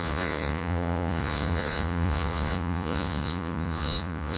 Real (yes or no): no